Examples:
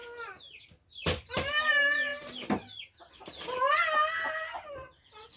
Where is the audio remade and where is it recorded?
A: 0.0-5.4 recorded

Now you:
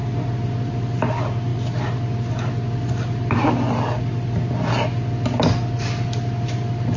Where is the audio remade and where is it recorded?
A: 0.0-7.0 recorded

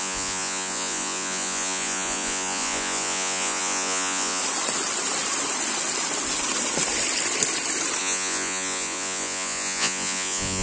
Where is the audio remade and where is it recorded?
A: 0.0-4.4 remade; 4.4-8.0 recorded; 8.0-10.6 remade

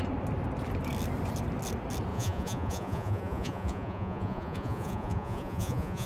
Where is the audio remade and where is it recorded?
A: 0.0-2.1 recorded; 2.1-6.1 remade

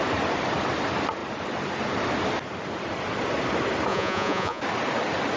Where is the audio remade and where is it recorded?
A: 0.0-3.9 recorded; 3.9-4.6 remade; 4.6-5.4 recorded

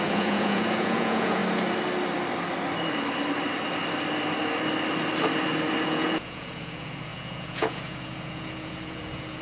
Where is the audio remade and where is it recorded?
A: 0.0-1.4 remade; 1.4-5.8 recorded; 5.8-9.4 remade

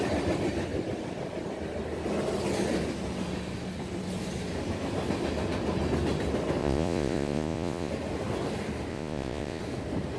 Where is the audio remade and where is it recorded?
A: 0.0-6.6 recorded; 6.6-7.9 remade; 7.9-8.9 recorded; 8.9-9.6 remade; 9.6-10.2 recorded